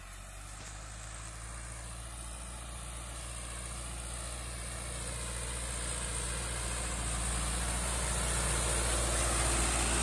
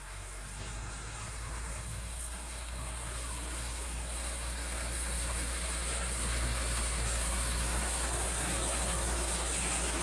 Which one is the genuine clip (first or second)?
first